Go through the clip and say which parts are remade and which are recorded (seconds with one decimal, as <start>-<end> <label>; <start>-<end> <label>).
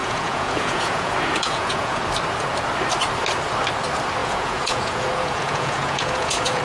0.0-2.0 remade; 2.0-4.2 recorded; 4.2-6.6 remade